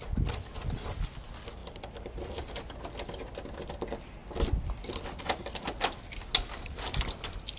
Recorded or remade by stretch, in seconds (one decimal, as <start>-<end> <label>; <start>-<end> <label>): 0.0-7.6 recorded